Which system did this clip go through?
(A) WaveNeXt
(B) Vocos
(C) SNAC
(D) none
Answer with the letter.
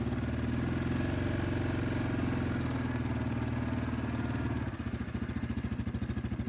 D